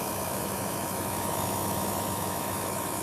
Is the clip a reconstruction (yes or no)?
yes